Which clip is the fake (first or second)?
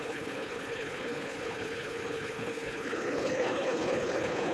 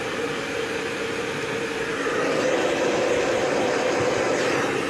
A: first